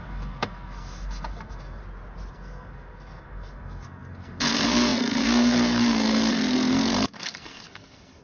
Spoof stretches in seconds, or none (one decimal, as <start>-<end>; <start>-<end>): 0.0-1.8; 2.3-8.2